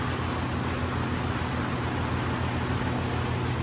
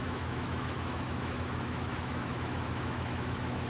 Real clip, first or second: first